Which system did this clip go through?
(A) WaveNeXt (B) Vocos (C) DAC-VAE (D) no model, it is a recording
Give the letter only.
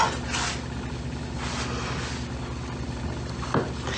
D